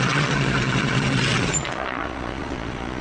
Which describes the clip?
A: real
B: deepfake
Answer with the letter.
B